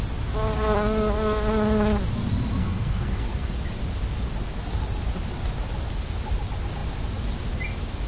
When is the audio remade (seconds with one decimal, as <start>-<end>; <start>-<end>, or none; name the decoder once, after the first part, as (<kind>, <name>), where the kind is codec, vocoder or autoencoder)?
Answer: 2.6-3.5 (codec, SNAC)